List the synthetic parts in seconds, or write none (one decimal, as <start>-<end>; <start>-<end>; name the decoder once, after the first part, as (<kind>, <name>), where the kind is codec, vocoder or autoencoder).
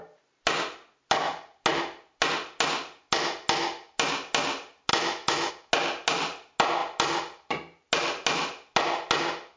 4.9-5.5 (autoencoder, DAC-VAE)